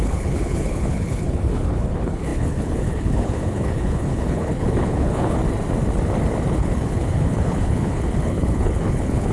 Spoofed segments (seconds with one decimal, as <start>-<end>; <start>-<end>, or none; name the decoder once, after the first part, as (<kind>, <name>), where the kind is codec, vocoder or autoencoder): 0.0-5.4 (codec, HILCodec); 6.5-9.3